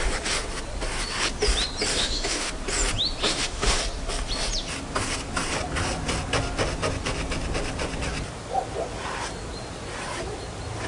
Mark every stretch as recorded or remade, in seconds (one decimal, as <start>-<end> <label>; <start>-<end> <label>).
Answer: 0.0-1.9 recorded; 1.9-2.5 remade; 2.5-3.2 recorded; 3.2-3.8 remade; 3.8-10.9 recorded